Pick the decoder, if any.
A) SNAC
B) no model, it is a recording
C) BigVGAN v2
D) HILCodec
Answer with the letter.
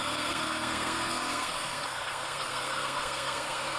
A